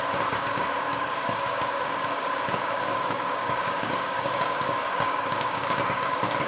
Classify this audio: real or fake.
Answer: fake